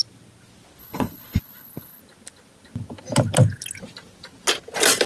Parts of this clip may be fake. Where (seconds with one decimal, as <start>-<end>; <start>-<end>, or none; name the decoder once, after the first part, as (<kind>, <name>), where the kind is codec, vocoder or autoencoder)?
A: 0.8-2.0 (codec, HILCodec)